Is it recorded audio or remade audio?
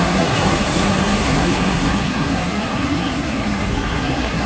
remade